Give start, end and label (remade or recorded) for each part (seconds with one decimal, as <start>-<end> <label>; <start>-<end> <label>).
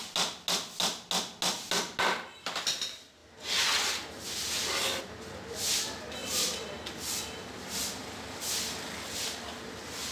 0.0-10.1 recorded